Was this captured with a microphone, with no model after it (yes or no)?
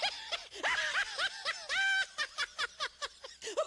yes